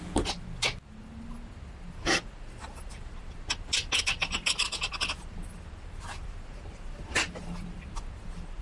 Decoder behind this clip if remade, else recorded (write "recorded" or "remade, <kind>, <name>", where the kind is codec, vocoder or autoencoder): recorded